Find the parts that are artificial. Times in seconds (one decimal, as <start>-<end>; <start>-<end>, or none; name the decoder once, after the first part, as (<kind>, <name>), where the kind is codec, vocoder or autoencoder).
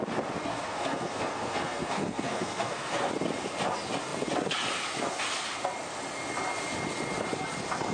0.5-3.1 (codec, SNAC)